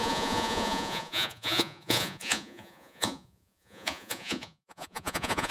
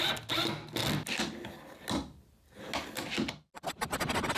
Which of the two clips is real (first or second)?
second